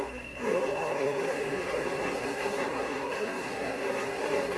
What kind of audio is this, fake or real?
fake